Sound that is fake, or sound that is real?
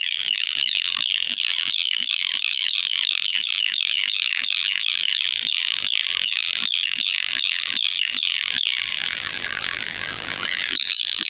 fake